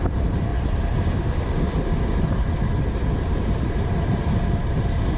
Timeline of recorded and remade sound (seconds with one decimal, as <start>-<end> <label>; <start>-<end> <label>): 0.0-5.2 recorded